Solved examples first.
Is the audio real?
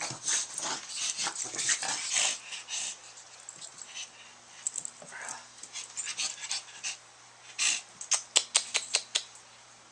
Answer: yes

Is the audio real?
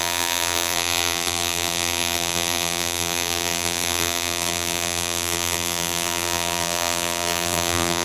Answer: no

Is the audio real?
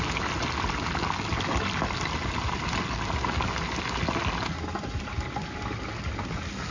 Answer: yes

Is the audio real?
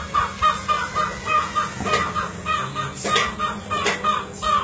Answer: yes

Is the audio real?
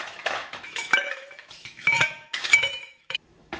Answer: no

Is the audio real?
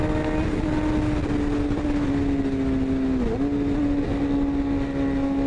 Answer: yes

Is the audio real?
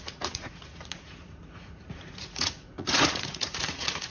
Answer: no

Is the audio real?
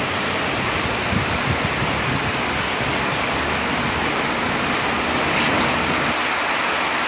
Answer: yes